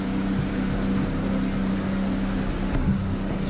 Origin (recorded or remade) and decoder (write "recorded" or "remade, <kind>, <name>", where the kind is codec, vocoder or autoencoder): recorded